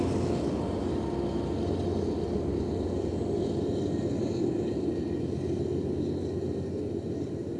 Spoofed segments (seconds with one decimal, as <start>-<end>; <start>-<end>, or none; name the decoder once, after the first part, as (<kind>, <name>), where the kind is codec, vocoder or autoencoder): none